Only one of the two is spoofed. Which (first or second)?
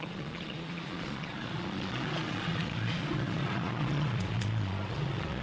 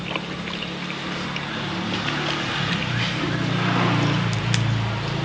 first